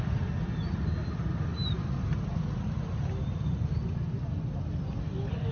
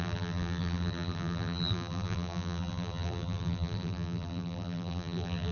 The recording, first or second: first